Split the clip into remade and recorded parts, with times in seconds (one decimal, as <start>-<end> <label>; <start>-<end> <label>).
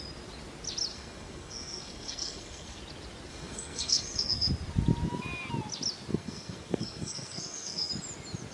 0.0-0.9 recorded; 0.9-2.8 remade; 2.8-3.3 recorded; 3.3-4.5 remade; 4.5-6.1 recorded; 6.1-7.9 remade; 7.9-8.5 recorded